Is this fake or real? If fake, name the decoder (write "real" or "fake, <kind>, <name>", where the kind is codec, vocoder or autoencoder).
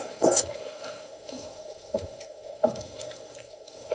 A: fake, codec, SNAC